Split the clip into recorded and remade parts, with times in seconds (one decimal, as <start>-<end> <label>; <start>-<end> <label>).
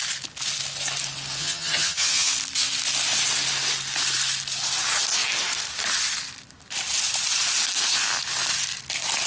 0.0-1.4 recorded; 1.4-2.3 remade; 2.3-9.3 recorded